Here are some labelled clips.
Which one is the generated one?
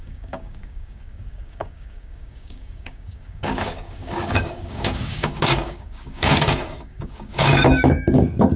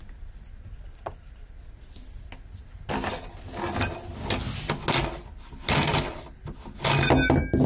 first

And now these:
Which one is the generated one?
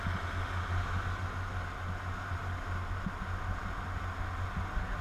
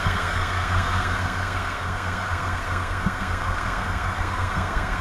second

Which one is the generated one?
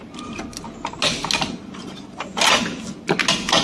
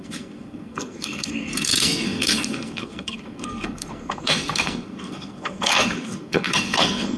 second